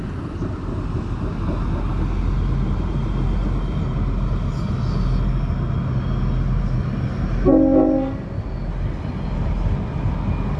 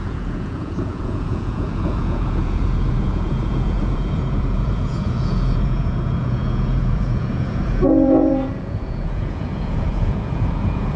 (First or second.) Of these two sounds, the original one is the first